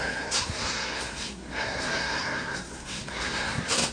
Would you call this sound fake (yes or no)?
yes